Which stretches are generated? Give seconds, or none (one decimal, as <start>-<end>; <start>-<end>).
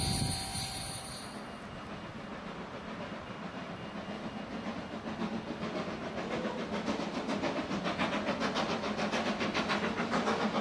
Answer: 0.5-1.1; 2.3-3.6